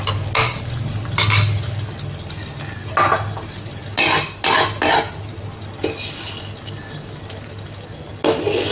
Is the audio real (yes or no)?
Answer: yes